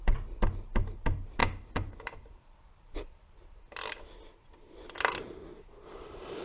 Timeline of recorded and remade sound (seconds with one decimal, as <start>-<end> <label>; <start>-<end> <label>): 0.0-1.4 recorded; 1.4-4.0 remade; 4.0-6.4 recorded